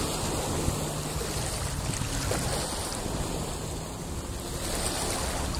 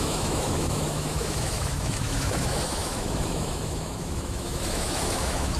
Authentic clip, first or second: first